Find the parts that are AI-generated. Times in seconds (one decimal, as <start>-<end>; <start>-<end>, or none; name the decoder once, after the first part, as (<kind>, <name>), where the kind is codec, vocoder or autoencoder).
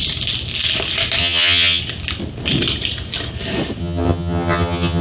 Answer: 1.2-1.8 (vocoder, HiFi-GAN); 3.8-5.0